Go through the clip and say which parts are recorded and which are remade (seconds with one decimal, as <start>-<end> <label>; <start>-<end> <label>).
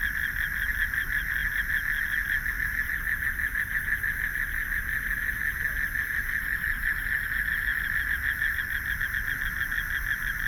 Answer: 0.0-10.5 recorded